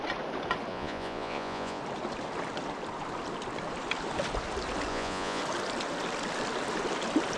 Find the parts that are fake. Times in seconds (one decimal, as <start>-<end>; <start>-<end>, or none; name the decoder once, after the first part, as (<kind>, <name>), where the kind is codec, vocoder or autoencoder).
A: 0.7-1.8 (vocoder, Vocos); 4.9-5.4